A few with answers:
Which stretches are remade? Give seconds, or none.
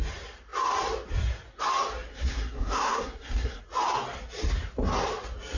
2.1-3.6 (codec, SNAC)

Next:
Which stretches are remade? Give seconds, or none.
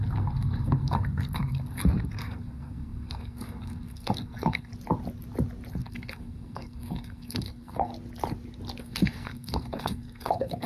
0.0-4.7 (codec, SNAC); 5.7-7.9; 8.8-10.7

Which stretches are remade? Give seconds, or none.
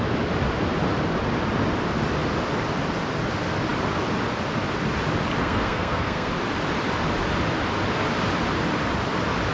5.4-6.3 (codec, SNAC)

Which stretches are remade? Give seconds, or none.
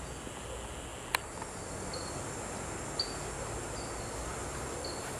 none